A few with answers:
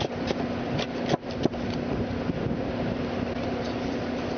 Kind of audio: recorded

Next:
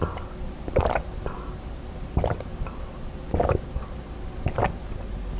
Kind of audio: recorded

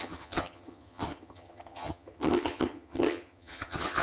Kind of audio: remade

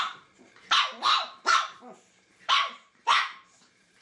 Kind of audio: remade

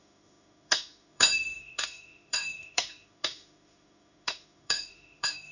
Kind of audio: remade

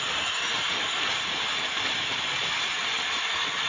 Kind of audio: recorded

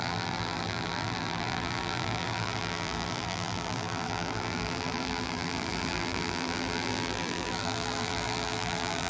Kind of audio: remade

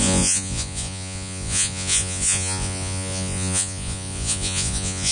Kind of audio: remade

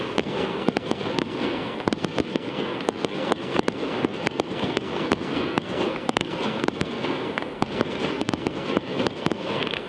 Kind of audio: remade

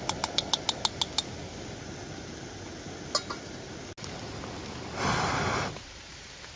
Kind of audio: recorded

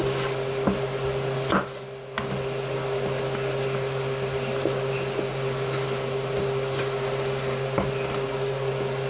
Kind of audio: recorded